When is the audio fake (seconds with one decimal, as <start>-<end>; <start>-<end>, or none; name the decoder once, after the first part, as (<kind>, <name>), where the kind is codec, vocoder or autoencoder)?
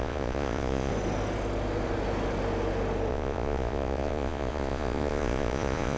0.0-0.9 (vocoder, Vocos); 3.1-6.0